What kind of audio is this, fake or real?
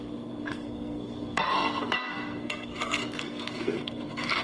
fake